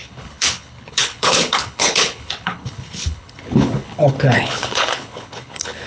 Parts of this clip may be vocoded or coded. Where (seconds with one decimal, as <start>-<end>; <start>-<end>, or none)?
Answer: 0.0-5.9